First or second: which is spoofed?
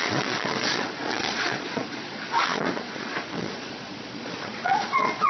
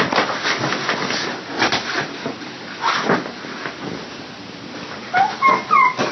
first